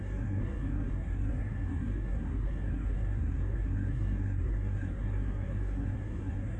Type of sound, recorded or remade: remade